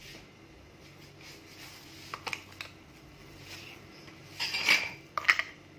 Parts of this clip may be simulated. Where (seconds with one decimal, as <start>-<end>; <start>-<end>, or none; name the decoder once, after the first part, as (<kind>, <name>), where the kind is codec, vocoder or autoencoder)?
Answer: 3.2-4.7 (vocoder, BigVGAN v2)

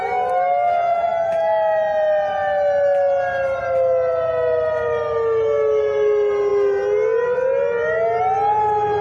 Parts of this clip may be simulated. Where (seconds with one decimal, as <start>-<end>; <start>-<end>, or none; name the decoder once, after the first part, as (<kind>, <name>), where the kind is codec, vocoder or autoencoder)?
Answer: none

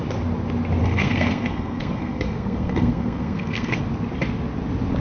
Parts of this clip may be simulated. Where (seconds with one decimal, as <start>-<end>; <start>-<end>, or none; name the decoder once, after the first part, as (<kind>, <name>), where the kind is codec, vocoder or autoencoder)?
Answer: 0.8-3.8 (codec, SNAC)

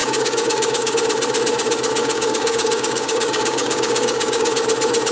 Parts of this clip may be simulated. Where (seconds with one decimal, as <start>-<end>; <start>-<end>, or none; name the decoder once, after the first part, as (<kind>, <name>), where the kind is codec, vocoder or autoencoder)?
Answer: 0.0-0.9 (codec, DAC); 2.0-4.5

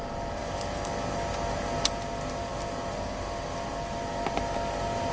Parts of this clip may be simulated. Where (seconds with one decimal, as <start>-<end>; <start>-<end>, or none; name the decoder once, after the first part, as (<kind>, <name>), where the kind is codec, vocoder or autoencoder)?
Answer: none

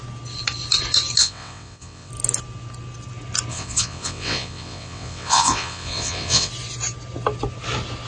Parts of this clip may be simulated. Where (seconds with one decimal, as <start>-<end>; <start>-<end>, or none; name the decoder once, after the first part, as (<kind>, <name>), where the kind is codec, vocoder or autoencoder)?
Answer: 1.2-2.1 (vocoder, WaveNeXt); 3.5-6.5

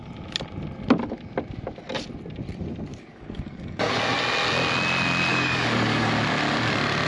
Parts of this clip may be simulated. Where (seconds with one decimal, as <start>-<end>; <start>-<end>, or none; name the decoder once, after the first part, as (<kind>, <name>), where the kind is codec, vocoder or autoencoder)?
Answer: 2.9-4.0 (codec, DAC); 5.3-6.1

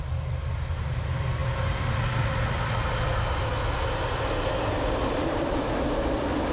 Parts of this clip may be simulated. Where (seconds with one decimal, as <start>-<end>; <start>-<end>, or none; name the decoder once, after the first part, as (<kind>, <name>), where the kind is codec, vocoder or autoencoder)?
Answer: none